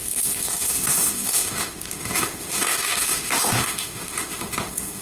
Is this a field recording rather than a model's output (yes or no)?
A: no